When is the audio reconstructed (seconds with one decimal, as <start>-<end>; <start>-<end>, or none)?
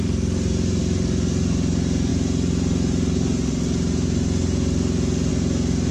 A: none